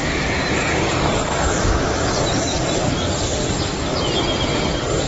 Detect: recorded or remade recorded